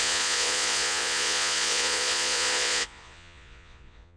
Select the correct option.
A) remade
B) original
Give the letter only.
A